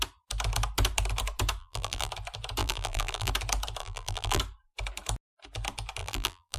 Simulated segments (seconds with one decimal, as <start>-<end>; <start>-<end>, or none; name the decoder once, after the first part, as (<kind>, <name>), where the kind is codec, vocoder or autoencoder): 1.6-2.1 (vocoder, BigVGAN v2); 2.6-3.3; 3.8-4.4; 6.0-6.6